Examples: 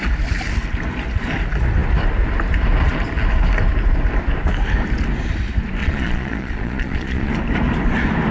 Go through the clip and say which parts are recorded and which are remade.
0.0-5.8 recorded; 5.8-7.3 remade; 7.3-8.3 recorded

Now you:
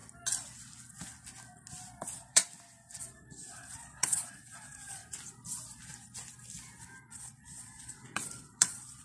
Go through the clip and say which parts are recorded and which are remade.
0.0-2.0 recorded; 2.0-2.4 remade; 2.4-3.0 recorded; 3.0-5.0 remade; 5.0-7.0 recorded; 7.0-9.0 remade

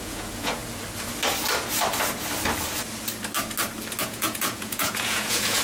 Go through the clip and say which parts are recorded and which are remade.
0.0-0.6 remade; 0.6-4.0 recorded; 4.0-5.6 remade